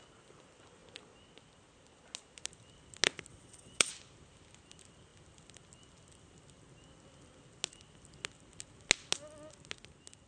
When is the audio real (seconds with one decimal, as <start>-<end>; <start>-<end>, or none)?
0.0-3.3; 3.9-10.3